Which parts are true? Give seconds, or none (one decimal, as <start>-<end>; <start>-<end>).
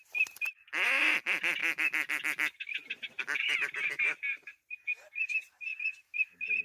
1.6-3.0; 4.3-5.2; 5.7-6.6